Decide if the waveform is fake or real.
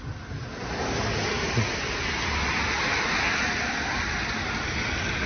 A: real